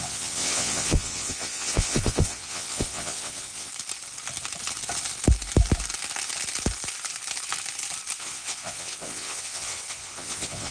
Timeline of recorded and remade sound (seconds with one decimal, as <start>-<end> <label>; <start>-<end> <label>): 0.0-3.7 remade; 3.7-8.2 recorded; 8.2-10.7 remade